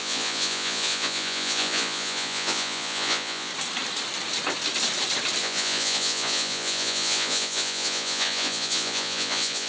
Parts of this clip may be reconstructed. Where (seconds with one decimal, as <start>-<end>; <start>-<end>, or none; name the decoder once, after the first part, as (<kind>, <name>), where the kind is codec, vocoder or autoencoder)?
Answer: 0.0-3.5 (vocoder, Vocos); 5.4-9.7